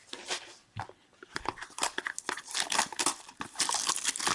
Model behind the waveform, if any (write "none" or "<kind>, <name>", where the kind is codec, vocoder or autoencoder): none